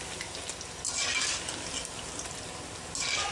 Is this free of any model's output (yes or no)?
yes